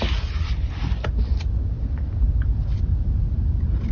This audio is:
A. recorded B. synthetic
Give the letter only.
A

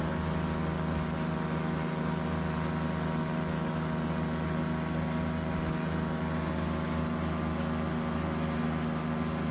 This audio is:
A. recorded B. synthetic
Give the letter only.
A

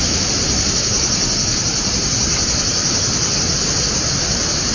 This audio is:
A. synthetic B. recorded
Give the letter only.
B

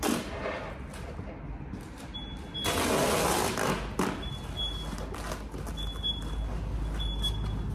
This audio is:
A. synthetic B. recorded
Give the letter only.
B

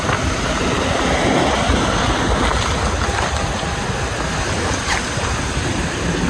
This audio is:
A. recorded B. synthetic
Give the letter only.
A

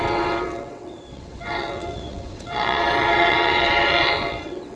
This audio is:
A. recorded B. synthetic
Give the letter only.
B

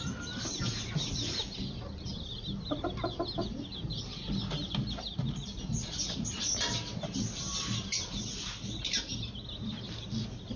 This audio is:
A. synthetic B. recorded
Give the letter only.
B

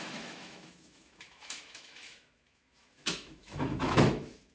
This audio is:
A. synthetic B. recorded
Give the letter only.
A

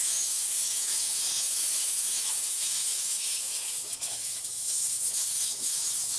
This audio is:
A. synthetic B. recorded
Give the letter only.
A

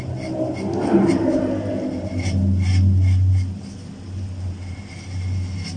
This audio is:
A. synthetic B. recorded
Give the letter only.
B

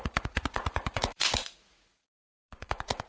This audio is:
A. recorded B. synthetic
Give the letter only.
B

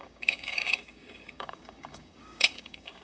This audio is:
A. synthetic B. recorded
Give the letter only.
A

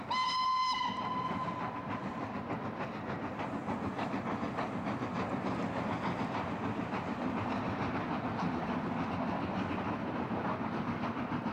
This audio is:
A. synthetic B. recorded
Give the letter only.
B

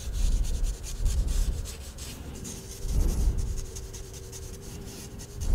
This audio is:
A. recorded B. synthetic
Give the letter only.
B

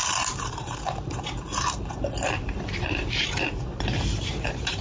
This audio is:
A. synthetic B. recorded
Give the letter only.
A